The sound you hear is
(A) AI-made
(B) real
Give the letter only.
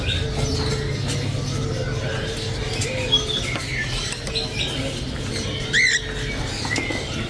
B